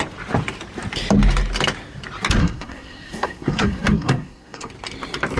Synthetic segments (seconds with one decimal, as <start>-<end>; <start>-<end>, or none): 2.4-4.7